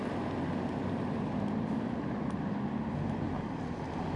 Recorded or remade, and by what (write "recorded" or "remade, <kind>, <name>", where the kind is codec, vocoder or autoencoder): recorded